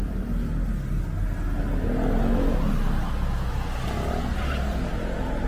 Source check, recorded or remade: recorded